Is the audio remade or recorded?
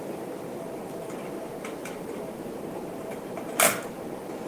remade